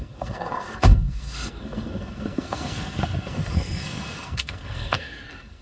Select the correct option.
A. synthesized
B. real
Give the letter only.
A